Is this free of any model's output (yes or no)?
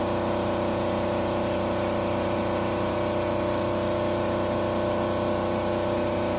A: yes